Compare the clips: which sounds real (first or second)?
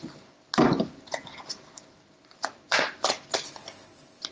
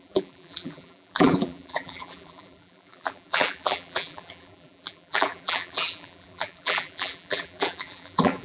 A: first